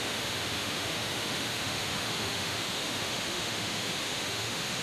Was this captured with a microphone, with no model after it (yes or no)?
no